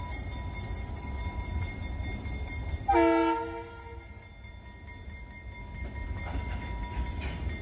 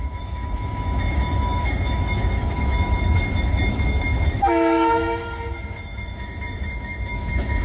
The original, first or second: first